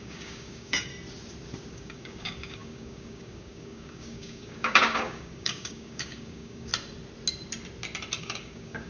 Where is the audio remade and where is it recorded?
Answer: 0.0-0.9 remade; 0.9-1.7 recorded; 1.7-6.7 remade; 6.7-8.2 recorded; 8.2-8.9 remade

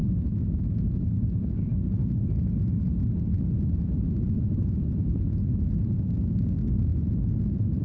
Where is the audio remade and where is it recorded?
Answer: 0.0-1.7 remade; 1.7-6.0 recorded; 6.0-6.9 remade; 6.9-7.8 recorded

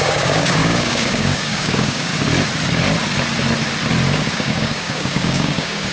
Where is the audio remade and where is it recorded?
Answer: 0.0-2.1 remade; 2.1-4.1 recorded; 4.1-5.9 remade